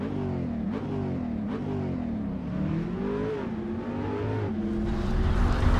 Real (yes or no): yes